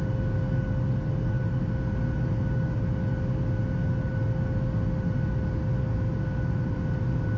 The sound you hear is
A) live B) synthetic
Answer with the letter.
A